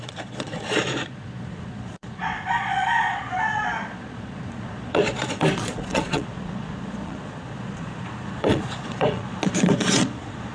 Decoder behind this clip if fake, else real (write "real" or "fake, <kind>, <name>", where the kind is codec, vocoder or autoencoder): fake, vocoder, Vocos